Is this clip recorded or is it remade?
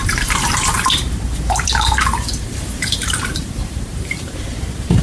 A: remade